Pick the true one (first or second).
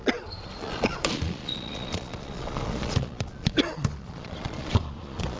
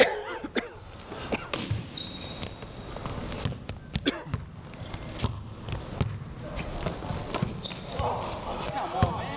second